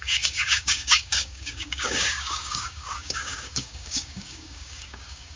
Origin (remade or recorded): remade